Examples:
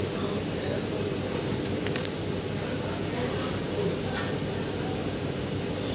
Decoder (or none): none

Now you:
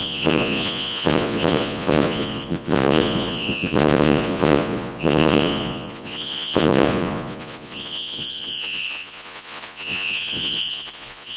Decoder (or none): vocoder, Vocos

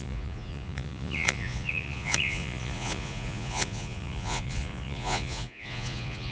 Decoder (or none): vocoder, Vocos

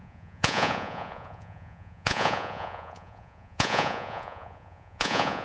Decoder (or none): vocoder, Vocos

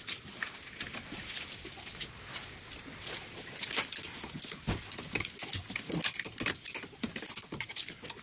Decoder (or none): none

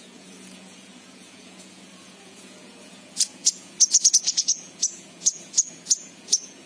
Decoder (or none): vocoder, Vocos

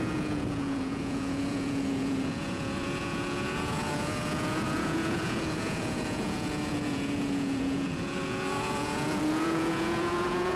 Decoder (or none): vocoder, Vocos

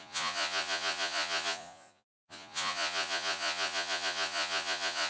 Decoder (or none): vocoder, Vocos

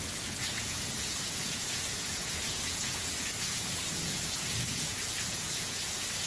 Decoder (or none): vocoder, Vocos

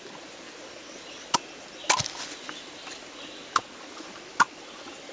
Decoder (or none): none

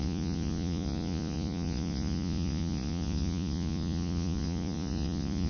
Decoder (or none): vocoder, Vocos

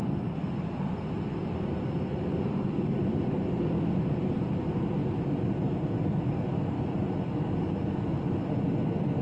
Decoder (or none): none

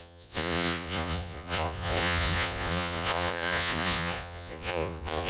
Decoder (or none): vocoder, Vocos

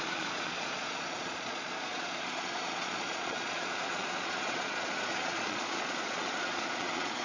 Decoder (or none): vocoder, Vocos